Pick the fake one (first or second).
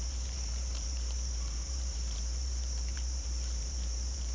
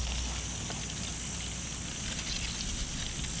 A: first